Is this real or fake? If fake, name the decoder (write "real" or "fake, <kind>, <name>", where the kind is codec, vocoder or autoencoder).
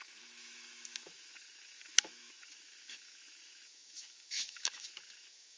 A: fake, autoencoder, DAC-VAE